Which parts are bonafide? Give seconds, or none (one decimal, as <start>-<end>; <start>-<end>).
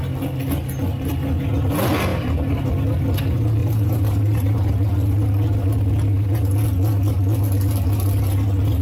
0.0-2.1; 2.7-3.6; 4.7-8.8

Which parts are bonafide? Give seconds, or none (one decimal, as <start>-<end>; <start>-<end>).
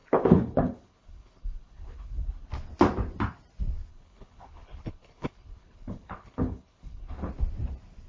2.5-3.9; 7.3-8.1